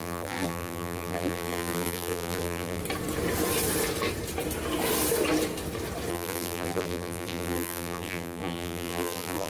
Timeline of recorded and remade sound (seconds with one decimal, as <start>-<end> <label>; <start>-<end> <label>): 0.0-2.8 remade; 2.8-6.1 recorded; 6.1-9.5 remade